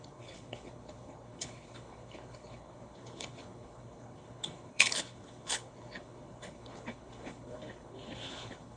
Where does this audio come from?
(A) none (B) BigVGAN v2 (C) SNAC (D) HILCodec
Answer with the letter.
D